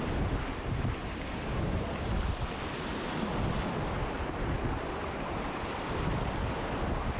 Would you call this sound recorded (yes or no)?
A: yes